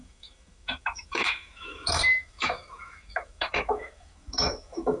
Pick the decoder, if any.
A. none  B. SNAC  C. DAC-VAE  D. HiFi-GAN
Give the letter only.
C